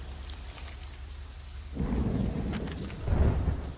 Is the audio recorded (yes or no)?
yes